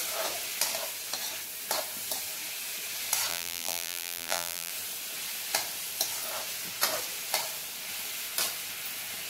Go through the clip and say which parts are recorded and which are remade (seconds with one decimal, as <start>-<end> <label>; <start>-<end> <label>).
0.0-3.3 recorded; 3.3-4.7 remade; 4.7-9.3 recorded